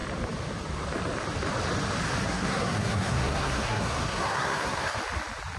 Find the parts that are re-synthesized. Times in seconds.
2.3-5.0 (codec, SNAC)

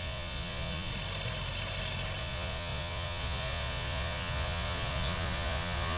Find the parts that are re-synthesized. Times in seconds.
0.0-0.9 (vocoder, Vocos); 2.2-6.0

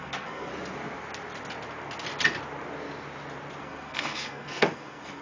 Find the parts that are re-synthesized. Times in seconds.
0.0-0.5 (codec, SNAC); 3.6-5.2

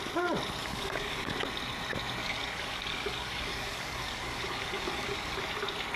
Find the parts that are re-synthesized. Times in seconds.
0.6-1.3 (codec, DAC); 2.2-5.4

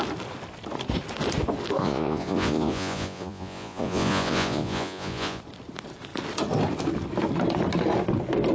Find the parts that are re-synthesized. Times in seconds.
1.8-5.4 (vocoder, Vocos)

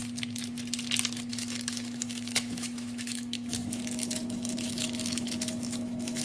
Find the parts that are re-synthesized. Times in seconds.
1.3-6.2 (autoencoder, DAC-VAE)

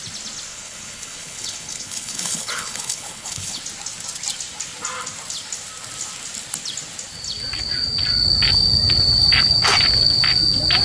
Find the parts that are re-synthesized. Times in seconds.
0.5-3.6 (codec, HILCodec)

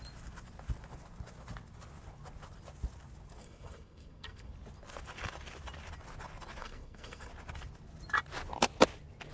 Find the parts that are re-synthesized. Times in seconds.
3.4-4.5 (codec, SNAC); 6.6-7.3